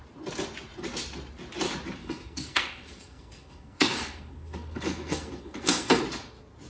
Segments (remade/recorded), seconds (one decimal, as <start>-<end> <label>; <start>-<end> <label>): 0.0-2.0 recorded; 2.0-6.0 remade; 6.0-6.7 recorded